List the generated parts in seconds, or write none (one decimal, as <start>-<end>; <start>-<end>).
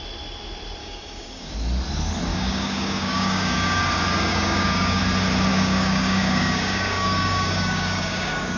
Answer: 0.8-1.5; 2.3-3.8; 4.3-5.0; 5.5-8.6